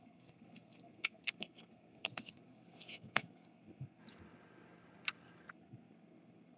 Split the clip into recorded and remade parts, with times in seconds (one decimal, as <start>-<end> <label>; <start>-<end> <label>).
0.0-4.0 remade; 4.0-5.5 recorded; 5.5-6.6 remade